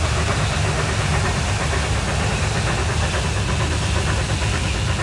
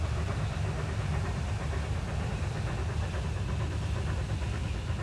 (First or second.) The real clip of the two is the first